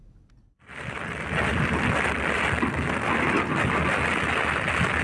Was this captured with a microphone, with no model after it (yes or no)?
yes